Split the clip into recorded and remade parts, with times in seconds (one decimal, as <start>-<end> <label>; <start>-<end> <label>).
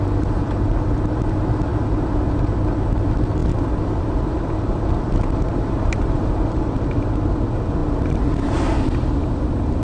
0.0-9.8 recorded